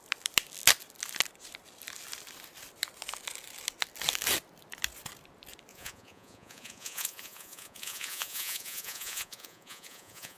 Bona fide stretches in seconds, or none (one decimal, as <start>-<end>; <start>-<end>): 0.0-5.7